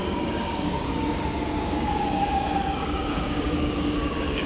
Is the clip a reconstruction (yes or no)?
yes